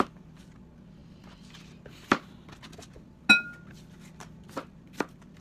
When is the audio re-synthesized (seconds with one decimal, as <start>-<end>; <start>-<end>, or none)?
none